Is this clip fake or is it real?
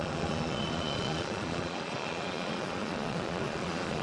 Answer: fake